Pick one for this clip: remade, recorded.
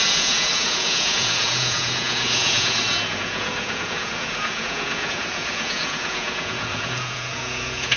remade